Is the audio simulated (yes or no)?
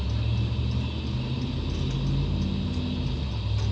no